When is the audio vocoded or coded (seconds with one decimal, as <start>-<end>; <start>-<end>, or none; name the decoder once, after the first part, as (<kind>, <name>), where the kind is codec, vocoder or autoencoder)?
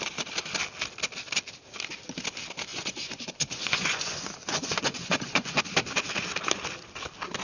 2.7-5.6 (vocoder, Vocos)